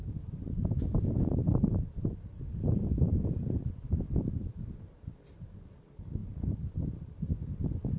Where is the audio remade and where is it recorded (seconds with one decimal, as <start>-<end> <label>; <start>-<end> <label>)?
0.0-8.0 remade